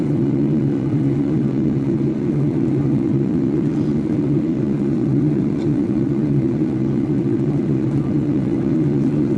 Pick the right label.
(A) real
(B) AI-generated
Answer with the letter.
B